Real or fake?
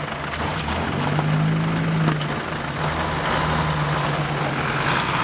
real